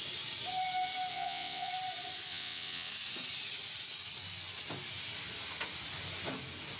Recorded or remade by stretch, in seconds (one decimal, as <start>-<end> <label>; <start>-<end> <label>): 0.0-1.1 recorded; 1.1-1.7 remade; 1.7-2.3 recorded; 2.3-2.9 remade; 2.9-6.8 recorded